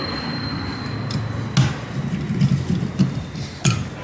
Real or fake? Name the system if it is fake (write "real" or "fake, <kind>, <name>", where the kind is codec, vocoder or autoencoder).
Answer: real